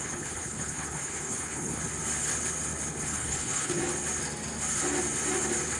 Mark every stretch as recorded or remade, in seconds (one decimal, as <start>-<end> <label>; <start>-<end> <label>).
0.0-1.8 remade; 1.8-3.0 recorded; 3.0-3.8 remade; 3.8-5.8 recorded